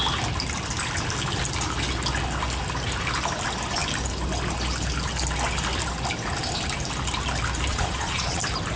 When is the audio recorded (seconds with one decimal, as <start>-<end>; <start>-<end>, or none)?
0.0-7.7; 8.4-8.8